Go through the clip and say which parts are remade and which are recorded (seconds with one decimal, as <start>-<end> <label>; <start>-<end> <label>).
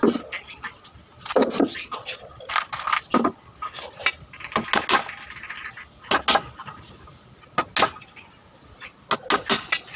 0.0-10.0 recorded